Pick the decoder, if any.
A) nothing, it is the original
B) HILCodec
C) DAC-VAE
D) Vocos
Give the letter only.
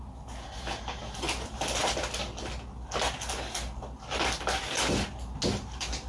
A